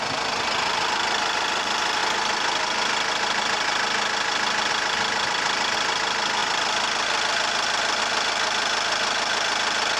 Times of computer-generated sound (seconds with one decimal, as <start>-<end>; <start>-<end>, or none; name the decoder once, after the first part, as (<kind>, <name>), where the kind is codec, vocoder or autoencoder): none